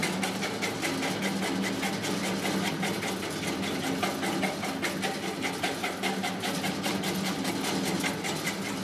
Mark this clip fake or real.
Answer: real